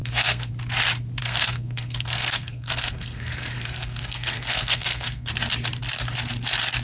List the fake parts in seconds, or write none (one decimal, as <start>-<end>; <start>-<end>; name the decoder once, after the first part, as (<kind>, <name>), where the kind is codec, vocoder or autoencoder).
0.0-0.5 (codec, SNAC); 1.2-5.3